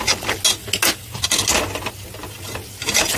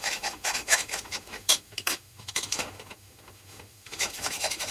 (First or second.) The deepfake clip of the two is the second